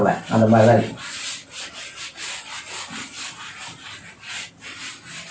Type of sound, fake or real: real